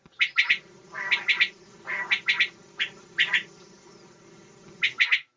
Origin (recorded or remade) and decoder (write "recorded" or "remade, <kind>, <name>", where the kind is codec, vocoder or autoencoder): recorded